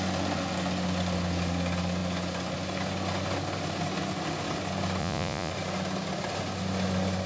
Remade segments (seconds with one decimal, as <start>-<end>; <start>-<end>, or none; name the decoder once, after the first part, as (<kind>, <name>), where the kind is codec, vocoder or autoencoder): 5.0-5.5 (vocoder, Vocos)